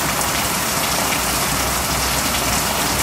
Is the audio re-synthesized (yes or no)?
no